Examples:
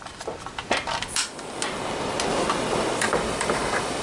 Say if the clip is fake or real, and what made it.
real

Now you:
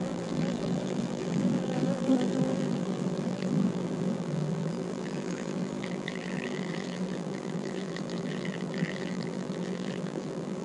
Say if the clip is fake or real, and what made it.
fake, vocoder, BigVGAN v2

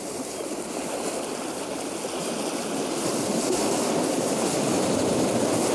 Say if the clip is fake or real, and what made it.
real